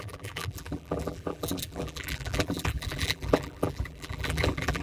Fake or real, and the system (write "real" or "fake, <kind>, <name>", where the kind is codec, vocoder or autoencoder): fake, vocoder, BigVGAN v2